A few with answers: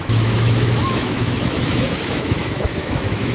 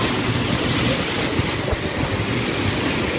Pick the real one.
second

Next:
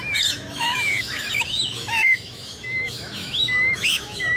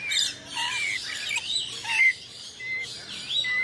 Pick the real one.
second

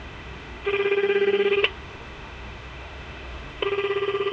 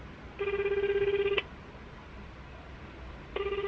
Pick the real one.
second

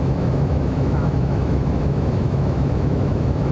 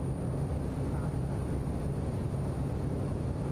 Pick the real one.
second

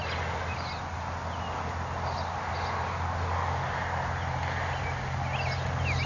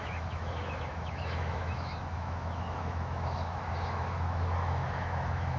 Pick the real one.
first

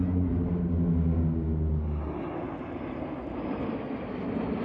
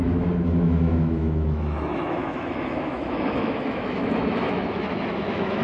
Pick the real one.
first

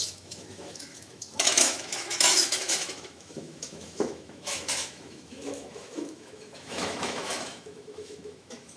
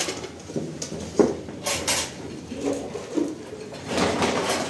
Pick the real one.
second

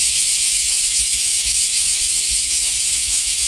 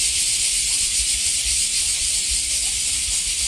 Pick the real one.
second